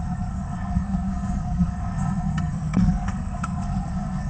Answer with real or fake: fake